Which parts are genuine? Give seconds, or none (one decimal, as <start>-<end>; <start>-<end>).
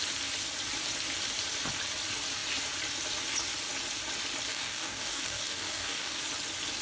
0.0-4.5; 6.2-6.8